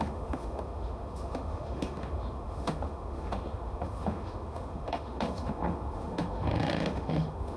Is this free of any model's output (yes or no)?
no